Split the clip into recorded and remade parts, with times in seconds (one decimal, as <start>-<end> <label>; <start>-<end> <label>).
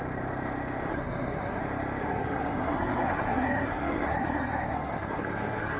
0.0-0.9 recorded; 0.9-1.6 remade; 1.6-2.0 recorded; 2.0-5.8 remade